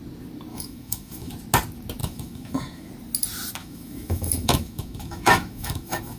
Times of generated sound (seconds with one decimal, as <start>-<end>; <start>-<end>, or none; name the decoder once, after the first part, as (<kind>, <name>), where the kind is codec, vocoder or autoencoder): 0.5-1.3 (autoencoder, DAC-VAE); 2.0-2.9; 3.6-6.2